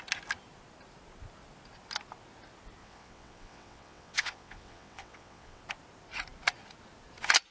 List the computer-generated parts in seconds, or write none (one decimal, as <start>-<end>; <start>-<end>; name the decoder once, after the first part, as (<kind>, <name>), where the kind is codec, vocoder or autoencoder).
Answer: 2.8-5.6 (vocoder, WaveNeXt)